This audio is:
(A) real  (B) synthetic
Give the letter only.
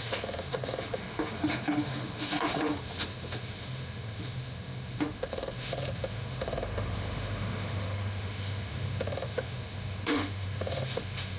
B